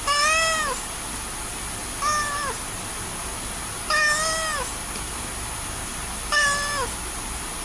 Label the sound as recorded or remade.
recorded